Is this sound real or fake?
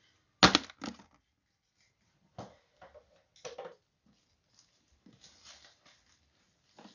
real